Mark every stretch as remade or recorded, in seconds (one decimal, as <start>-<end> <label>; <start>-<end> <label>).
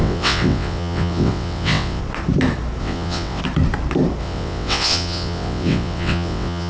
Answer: 0.0-2.0 remade; 2.0-2.8 recorded; 2.8-3.4 remade; 3.4-4.2 recorded; 4.2-6.7 remade